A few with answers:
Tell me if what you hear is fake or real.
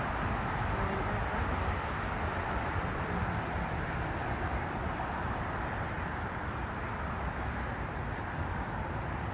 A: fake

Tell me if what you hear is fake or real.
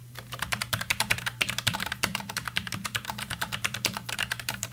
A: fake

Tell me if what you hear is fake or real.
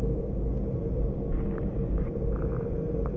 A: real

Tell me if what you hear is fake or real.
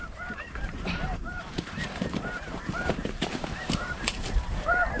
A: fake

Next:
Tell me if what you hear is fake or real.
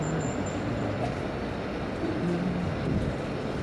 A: real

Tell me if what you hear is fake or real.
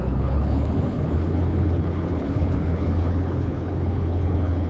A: fake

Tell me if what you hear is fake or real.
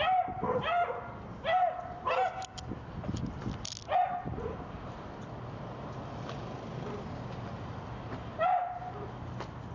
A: real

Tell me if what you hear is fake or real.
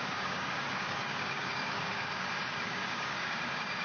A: fake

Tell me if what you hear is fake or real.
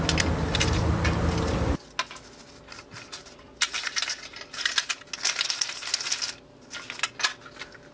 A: real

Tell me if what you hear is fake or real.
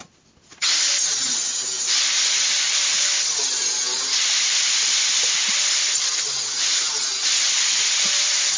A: real